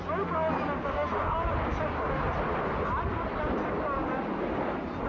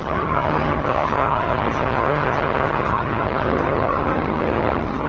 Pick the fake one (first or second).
second